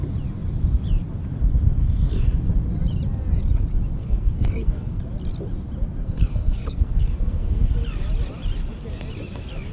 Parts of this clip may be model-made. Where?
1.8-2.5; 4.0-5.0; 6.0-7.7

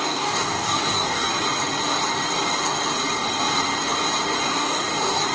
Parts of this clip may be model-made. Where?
0.0-1.3; 4.5-5.3

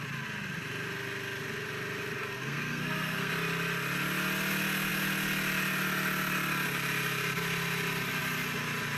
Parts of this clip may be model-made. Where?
2.2-3.3